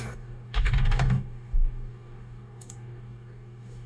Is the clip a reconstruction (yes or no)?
yes